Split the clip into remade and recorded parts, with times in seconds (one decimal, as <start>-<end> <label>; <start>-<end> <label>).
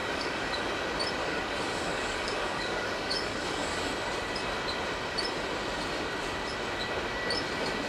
0.0-0.7 remade; 0.7-1.2 recorded; 1.2-3.9 remade; 3.9-7.9 recorded